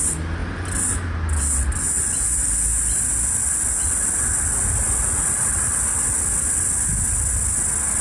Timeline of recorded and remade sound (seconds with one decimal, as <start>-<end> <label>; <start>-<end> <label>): 0.0-8.0 recorded